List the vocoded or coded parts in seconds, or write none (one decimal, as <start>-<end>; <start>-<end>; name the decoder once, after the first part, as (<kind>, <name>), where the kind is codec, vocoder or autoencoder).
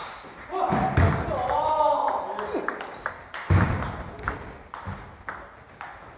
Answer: 0.0-0.6 (vocoder, BigVGAN v2); 2.9-3.8